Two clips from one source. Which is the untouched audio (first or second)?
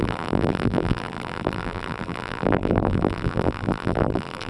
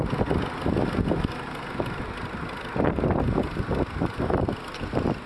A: second